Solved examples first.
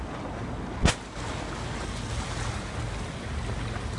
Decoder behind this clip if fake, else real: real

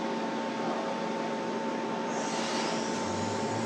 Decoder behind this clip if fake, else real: real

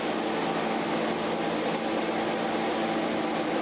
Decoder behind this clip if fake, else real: real